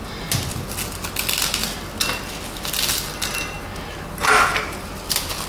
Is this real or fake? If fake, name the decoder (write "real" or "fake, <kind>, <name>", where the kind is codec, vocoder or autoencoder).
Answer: real